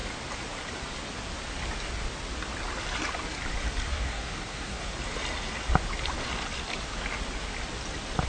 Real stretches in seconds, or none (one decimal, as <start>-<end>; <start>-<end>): 0.0-3.9; 4.9-8.3